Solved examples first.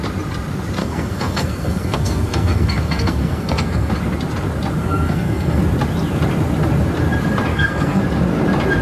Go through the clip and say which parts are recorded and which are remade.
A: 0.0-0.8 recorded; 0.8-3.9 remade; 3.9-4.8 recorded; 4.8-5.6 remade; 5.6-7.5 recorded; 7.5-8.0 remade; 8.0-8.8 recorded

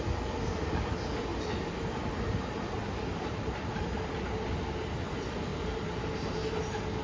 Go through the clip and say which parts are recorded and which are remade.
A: 0.0-1.3 recorded; 1.3-3.8 remade; 3.8-5.5 recorded; 5.5-6.6 remade; 6.6-7.0 recorded

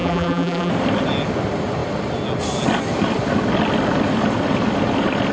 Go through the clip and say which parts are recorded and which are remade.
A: 0.0-0.7 remade; 0.7-5.3 recorded

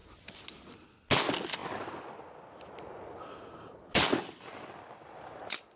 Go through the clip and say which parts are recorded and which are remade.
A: 0.0-5.8 recorded

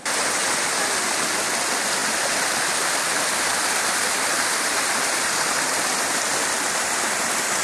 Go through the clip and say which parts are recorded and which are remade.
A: 0.0-7.6 recorded

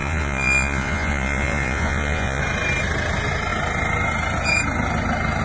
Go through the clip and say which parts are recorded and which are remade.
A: 0.0-2.4 remade; 2.4-5.4 recorded

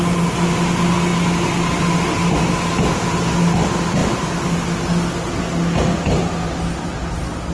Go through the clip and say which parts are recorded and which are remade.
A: 0.0-7.5 recorded